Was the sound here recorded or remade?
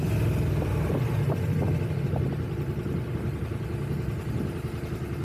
recorded